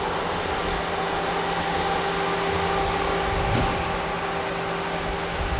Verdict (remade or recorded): recorded